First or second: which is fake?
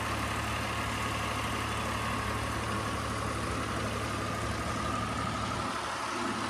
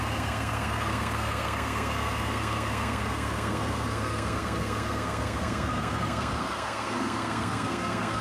second